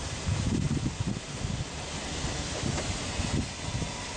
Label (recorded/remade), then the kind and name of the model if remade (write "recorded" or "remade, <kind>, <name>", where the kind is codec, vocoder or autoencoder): recorded